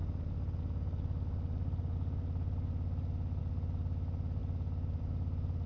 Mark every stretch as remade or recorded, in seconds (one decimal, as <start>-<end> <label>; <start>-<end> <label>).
0.0-5.7 recorded